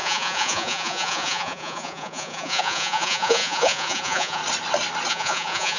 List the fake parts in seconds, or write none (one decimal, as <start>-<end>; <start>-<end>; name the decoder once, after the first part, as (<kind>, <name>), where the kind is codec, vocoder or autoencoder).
0.0-4.4 (vocoder, Vocos); 5.1-5.8